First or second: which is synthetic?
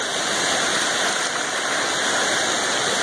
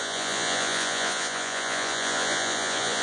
second